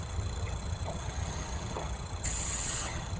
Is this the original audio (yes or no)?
no